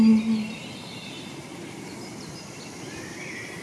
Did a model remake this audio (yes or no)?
no